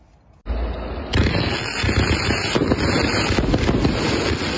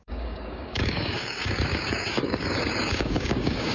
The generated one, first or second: second